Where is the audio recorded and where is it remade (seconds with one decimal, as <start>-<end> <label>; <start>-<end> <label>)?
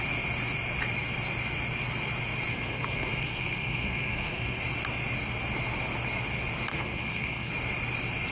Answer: 0.0-2.5 recorded; 2.5-4.6 remade; 4.6-6.7 recorded; 6.7-7.5 remade; 7.5-8.3 recorded